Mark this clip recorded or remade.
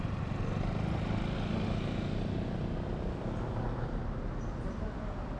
recorded